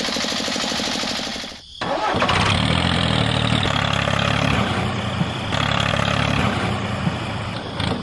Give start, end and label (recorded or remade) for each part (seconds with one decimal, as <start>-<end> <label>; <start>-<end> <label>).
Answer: 0.0-8.0 remade